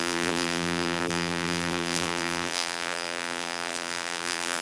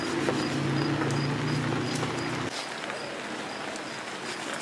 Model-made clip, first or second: first